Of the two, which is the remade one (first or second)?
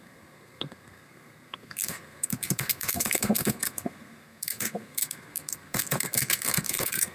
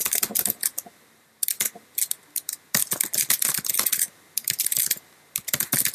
first